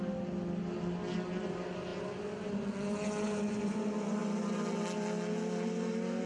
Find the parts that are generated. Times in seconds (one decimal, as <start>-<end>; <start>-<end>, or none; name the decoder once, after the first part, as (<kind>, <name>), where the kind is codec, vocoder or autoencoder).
none